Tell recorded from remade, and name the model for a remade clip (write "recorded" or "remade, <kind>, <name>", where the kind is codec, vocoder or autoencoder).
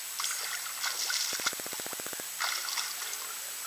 recorded